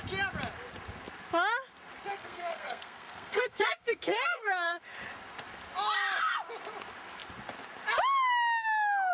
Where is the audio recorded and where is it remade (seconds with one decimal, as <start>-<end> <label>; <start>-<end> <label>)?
0.0-2.1 recorded; 2.1-4.8 remade; 4.8-9.1 recorded